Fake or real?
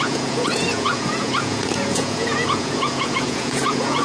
fake